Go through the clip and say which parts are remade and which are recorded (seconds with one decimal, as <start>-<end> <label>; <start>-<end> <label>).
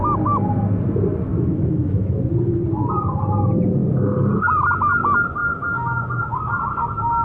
0.0-1.3 recorded; 1.3-2.2 remade; 2.2-5.4 recorded; 5.4-6.6 remade; 6.6-7.2 recorded